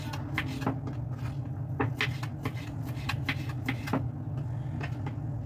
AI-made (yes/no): no